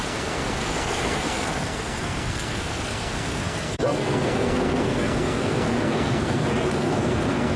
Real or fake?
fake